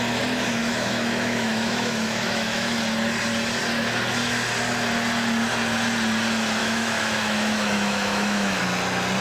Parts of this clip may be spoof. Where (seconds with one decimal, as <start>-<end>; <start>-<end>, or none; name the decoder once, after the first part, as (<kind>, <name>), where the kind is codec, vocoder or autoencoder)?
0.6-2.8 (autoencoder, DAC-VAE); 6.6-8.6

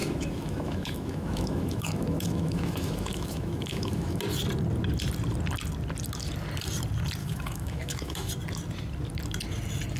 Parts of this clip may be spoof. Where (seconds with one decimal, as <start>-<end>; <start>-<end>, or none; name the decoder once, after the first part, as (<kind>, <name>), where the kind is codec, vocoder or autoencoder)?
0.0-4.2 (autoencoder, DAC-VAE); 7.2-8.3

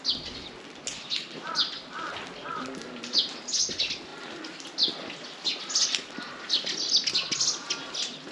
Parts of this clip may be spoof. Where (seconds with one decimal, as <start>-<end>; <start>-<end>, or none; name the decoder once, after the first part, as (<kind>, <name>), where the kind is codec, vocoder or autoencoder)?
none